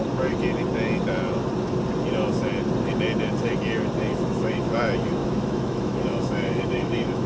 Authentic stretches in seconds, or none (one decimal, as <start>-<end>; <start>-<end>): 0.0-4.1; 4.6-5.2